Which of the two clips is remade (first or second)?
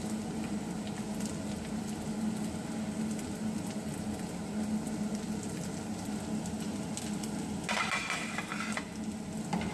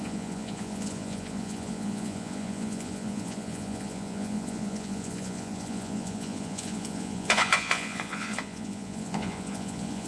second